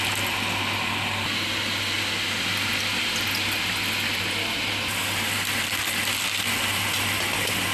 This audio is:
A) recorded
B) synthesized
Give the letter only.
A